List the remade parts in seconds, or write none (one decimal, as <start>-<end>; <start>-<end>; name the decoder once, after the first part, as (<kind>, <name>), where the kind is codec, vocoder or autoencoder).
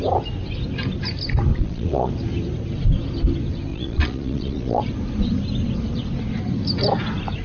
1.5-2.1 (vocoder, Vocos); 3.7-4.8